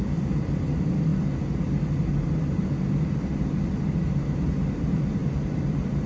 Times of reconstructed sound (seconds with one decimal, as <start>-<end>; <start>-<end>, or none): none